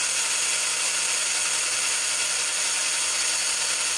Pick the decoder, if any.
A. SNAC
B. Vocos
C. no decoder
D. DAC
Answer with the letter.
C